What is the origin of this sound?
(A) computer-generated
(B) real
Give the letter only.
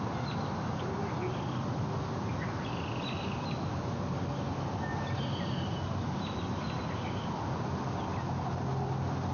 B